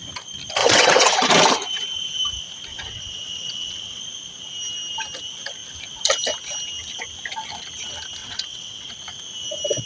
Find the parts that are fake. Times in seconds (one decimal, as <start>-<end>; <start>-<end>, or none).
0.6-1.3; 2.7-4.0; 8.2-8.9